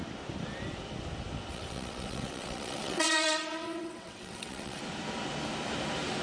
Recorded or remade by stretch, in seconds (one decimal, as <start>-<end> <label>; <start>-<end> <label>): 0.0-1.5 recorded; 1.5-4.8 remade; 4.8-6.2 recorded